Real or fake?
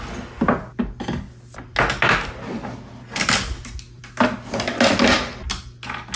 real